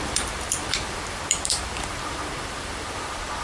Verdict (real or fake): fake